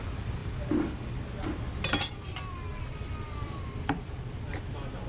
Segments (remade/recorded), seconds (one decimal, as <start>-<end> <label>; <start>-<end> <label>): 0.0-2.7 recorded; 2.7-4.1 remade; 4.1-5.1 recorded